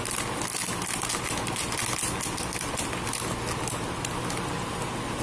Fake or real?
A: real